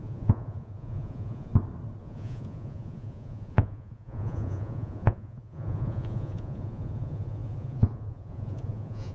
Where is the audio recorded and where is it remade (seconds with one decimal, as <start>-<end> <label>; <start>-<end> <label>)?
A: 0.0-1.5 remade; 1.5-2.0 recorded; 2.0-9.1 remade